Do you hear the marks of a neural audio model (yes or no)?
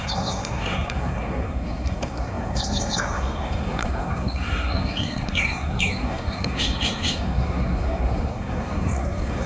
yes